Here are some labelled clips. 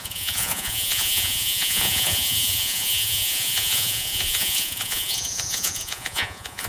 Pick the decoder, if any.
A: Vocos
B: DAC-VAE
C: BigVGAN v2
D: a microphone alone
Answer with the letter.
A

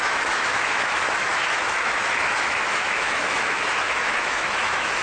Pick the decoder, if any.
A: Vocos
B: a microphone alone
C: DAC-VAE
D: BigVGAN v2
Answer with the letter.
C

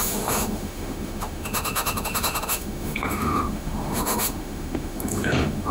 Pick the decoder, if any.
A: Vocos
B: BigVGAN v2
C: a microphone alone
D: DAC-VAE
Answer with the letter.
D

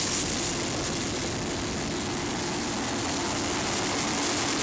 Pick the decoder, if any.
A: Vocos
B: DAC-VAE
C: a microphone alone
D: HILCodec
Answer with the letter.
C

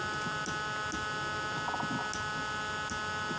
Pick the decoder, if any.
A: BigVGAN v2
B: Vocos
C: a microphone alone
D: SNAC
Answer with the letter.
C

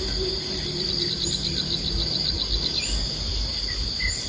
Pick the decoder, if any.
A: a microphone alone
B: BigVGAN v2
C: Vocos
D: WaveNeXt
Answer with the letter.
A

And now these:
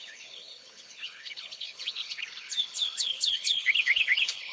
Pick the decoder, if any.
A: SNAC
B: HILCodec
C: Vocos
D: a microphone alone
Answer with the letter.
B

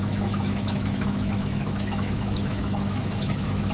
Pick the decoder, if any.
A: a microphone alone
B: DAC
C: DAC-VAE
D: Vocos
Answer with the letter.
C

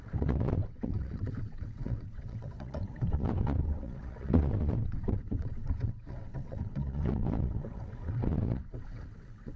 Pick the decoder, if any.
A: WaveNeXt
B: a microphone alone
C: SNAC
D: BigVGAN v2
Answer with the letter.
A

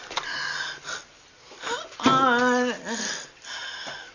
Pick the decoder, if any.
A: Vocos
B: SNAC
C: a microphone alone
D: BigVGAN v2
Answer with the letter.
C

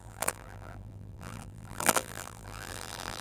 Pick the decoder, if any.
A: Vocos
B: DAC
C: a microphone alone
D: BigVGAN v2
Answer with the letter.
D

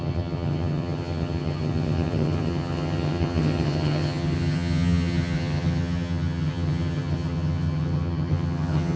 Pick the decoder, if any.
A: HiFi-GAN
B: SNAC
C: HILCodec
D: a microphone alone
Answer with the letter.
A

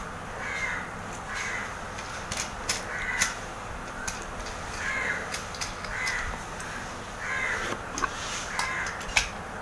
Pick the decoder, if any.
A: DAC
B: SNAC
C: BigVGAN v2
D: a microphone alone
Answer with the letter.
D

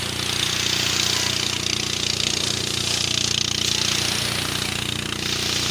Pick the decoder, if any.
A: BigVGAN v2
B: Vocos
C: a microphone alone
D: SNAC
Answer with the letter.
C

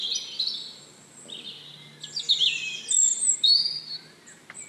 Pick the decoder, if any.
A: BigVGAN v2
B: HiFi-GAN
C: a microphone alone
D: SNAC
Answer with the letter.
C